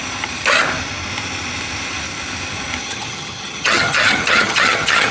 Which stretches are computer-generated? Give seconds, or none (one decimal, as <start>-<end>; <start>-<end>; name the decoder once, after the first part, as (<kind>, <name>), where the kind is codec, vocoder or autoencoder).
2.8-5.1 (vocoder, HiFi-GAN)